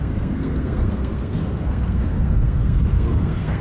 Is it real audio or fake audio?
fake